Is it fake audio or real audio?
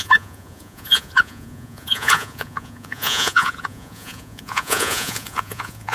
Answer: fake